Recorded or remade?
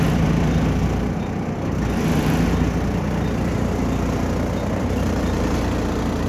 recorded